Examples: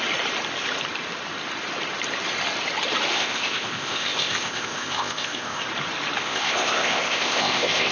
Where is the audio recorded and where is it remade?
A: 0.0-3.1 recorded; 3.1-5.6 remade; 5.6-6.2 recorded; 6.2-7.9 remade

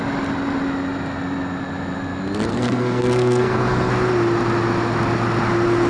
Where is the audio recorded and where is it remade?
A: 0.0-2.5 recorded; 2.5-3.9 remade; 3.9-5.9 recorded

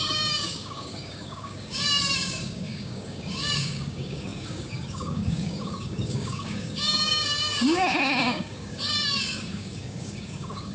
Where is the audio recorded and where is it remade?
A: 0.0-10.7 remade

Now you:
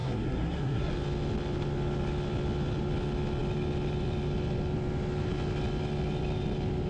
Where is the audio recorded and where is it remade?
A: 0.0-0.9 remade; 0.9-6.9 recorded

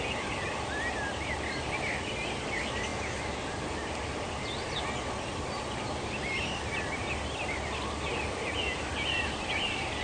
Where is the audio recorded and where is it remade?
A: 0.0-10.0 recorded